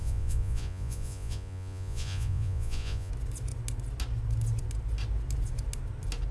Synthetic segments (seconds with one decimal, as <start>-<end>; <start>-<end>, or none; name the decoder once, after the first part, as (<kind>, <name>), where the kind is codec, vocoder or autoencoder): 0.0-3.1 (vocoder, Vocos)